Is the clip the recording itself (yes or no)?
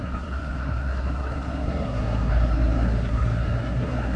no